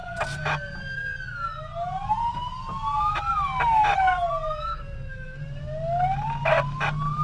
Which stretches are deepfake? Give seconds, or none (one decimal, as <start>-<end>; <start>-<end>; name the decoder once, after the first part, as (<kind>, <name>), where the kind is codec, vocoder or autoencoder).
4.7-5.4 (codec, SNAC)